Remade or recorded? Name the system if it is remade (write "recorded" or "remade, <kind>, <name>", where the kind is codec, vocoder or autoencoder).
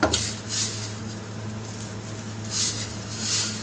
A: recorded